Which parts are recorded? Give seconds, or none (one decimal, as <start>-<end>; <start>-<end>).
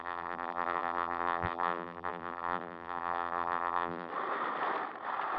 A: 4.1-5.4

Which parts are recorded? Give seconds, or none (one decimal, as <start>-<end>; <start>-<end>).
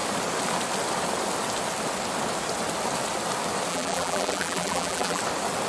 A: 0.0-3.7; 5.2-5.7